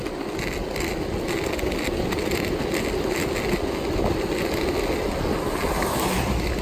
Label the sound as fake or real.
real